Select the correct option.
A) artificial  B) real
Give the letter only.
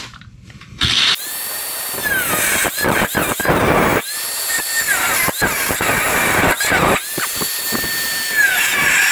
A